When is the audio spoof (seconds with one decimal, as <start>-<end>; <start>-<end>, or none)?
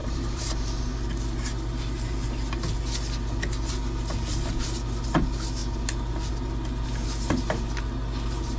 0.0-0.9